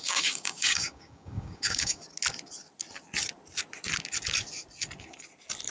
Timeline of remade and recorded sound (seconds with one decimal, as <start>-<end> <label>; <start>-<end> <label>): 0.0-2.0 remade; 2.0-5.7 recorded